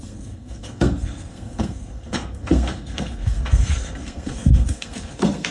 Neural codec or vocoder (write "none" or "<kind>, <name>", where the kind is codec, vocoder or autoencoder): codec, SNAC